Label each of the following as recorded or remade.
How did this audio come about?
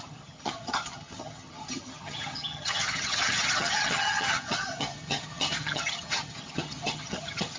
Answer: remade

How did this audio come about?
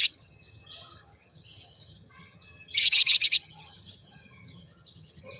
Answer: remade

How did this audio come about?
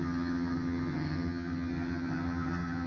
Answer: remade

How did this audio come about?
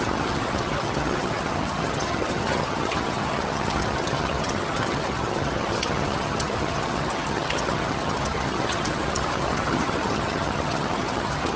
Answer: remade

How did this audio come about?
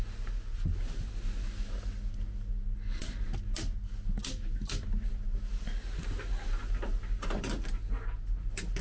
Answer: recorded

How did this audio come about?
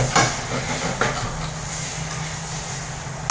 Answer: recorded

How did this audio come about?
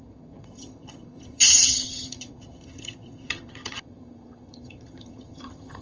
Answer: remade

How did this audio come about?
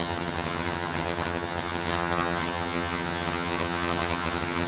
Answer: remade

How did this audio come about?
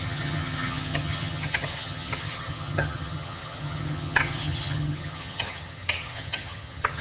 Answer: remade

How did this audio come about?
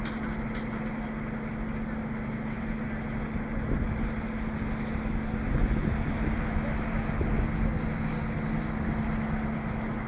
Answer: recorded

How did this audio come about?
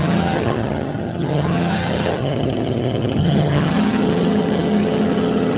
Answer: remade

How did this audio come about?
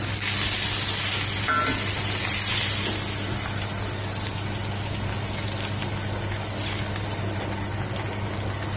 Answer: recorded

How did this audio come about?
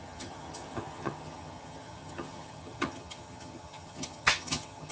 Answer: remade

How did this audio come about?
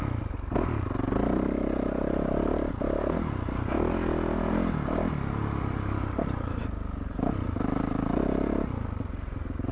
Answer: recorded